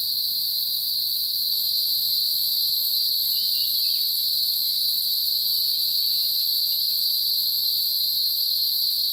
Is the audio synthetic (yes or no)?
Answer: yes